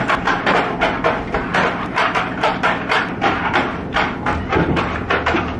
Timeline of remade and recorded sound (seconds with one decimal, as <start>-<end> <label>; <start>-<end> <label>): 0.0-1.5 recorded; 1.5-2.6 remade; 2.6-3.9 recorded; 3.9-5.1 remade; 5.1-5.6 recorded